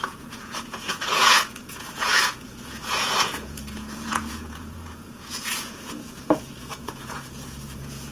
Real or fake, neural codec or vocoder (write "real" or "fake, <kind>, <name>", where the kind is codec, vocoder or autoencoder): fake, vocoder, Vocos